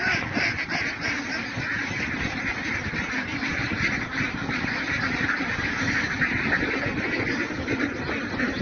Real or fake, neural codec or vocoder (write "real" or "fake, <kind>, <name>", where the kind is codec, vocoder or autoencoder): fake, vocoder, BigVGAN v2